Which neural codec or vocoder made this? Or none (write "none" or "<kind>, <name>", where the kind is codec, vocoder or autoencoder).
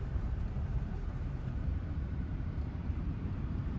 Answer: vocoder, BigVGAN v2